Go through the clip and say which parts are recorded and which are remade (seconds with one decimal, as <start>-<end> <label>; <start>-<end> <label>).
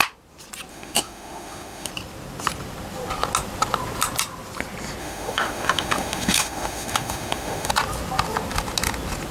0.0-0.7 recorded; 0.7-1.9 remade; 1.9-5.0 recorded; 5.0-7.7 remade; 7.7-9.3 recorded